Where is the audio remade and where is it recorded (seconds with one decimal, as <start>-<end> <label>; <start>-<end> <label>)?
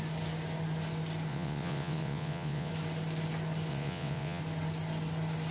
0.0-1.3 recorded; 1.3-2.7 remade; 2.7-3.7 recorded; 3.7-4.4 remade; 4.4-5.5 recorded